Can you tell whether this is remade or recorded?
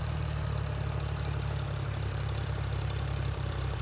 remade